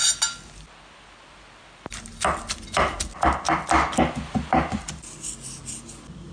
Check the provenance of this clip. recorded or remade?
recorded